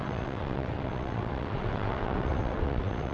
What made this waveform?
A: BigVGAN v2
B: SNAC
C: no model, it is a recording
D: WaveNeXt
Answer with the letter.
D